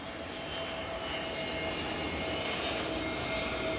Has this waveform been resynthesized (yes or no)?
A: no